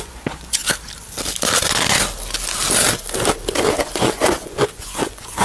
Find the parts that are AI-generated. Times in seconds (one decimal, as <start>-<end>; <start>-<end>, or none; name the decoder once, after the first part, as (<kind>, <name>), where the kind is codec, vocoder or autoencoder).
0.0-0.6 (vocoder, Vocos); 3.8-5.4